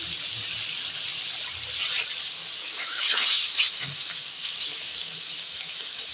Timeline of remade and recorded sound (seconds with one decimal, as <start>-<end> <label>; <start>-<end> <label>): 0.0-2.6 recorded; 2.6-6.1 remade